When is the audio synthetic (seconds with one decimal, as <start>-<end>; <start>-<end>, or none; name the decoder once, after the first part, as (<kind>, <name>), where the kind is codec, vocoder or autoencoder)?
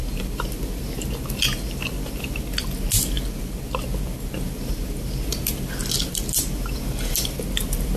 none